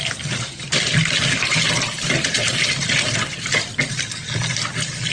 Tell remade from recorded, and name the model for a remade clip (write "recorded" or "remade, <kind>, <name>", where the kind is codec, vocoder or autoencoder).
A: recorded